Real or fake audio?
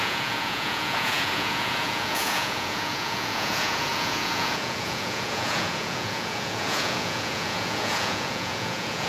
fake